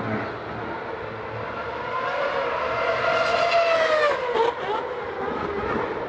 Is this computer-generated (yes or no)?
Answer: no